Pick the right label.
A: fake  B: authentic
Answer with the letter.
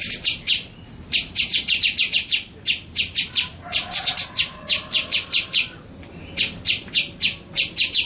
B